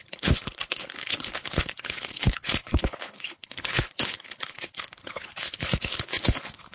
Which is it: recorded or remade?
remade